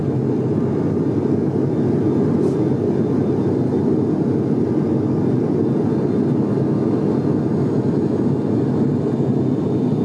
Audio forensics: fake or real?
real